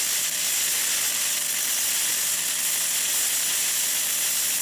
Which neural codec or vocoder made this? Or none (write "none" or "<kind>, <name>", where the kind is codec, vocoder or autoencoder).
none